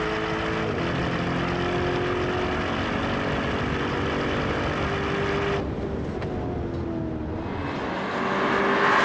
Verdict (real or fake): real